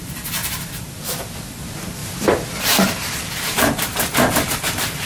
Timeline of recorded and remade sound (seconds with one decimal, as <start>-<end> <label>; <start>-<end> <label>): 0.0-0.4 recorded; 0.4-1.1 remade; 1.1-2.0 recorded; 2.0-5.1 remade